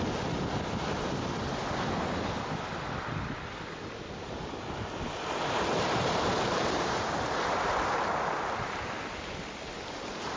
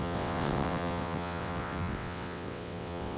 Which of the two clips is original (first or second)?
first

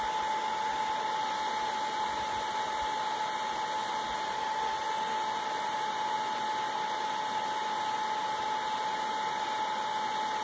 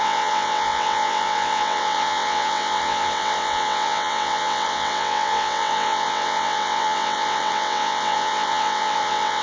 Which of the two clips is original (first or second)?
first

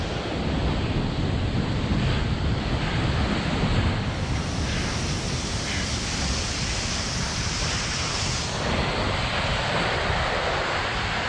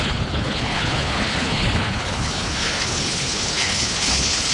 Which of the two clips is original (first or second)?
first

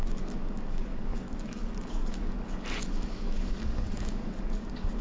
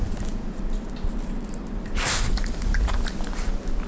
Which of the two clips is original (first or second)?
second